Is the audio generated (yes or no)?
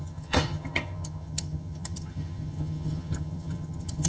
yes